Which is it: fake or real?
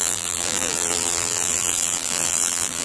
fake